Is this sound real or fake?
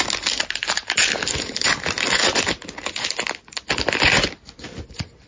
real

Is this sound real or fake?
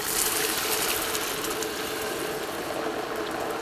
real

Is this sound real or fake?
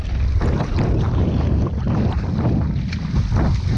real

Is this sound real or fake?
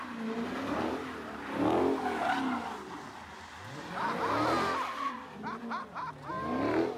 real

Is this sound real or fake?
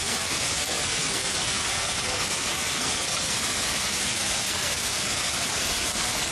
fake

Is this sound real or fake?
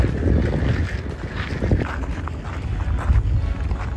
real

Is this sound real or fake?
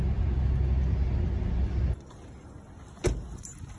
real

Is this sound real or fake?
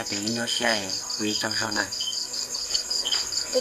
fake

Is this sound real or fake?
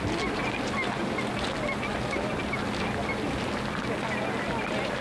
real